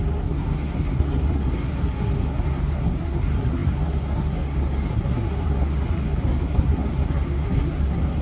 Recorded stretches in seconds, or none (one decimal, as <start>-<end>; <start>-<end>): none